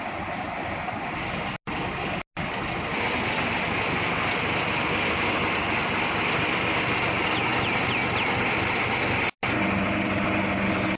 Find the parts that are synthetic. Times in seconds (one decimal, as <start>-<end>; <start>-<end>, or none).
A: none